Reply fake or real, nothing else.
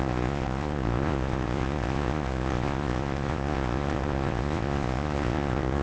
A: fake